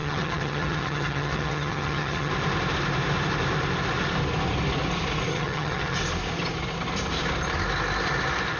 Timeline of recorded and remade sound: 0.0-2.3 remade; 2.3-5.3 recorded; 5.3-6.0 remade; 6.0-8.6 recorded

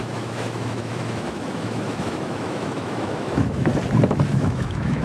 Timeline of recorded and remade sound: 0.0-3.7 remade; 3.7-4.4 recorded; 4.4-5.0 remade